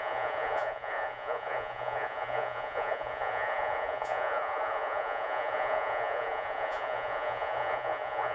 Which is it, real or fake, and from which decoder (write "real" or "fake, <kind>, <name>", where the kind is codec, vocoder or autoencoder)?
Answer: fake, vocoder, Vocos